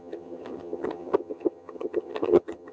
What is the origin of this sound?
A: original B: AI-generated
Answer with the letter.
B